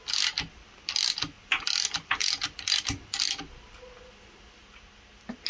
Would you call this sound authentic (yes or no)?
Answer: yes